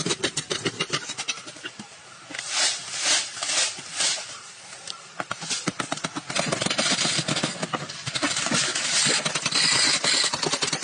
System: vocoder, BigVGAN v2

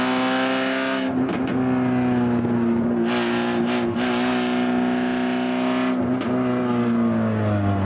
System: none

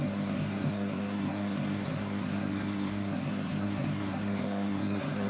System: codec, SNAC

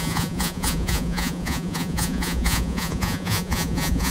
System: vocoder, Vocos